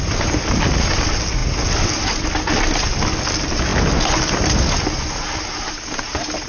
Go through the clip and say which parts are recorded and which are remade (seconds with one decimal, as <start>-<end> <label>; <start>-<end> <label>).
0.0-6.5 recorded